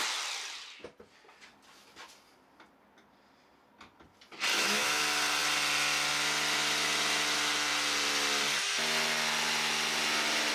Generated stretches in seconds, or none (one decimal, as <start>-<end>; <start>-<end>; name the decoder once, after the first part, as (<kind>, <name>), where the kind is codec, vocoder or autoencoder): 4.5-5.0 (autoencoder, DAC-VAE)